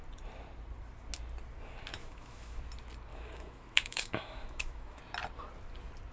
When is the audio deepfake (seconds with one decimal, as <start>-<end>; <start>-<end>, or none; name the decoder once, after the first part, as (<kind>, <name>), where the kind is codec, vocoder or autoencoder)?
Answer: 1.9-2.6 (autoencoder, DAC-VAE); 3.1-5.0